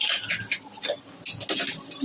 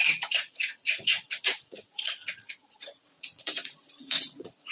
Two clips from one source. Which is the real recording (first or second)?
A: first